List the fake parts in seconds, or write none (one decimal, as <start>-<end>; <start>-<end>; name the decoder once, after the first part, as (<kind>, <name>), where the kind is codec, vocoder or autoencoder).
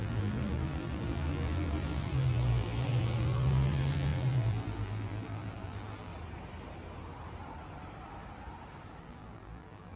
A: 0.0-6.1 (vocoder, BigVGAN v2); 9.0-10.0